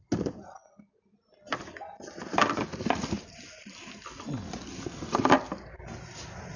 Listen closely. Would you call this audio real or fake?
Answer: real